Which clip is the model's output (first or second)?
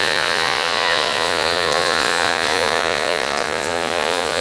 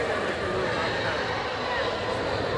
first